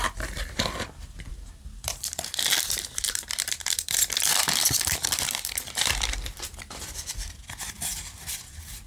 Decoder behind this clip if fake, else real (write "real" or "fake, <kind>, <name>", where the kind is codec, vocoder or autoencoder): fake, vocoder, BigVGAN v2